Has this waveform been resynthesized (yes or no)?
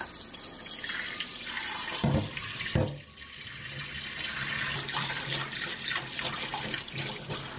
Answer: no